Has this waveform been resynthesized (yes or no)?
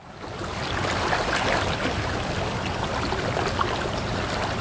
no